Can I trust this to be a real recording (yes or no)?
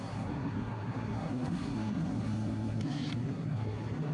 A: no